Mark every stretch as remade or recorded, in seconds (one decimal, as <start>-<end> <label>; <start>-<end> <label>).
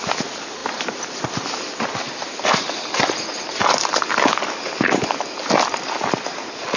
0.0-6.8 recorded